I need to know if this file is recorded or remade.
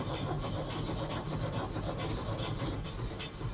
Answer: recorded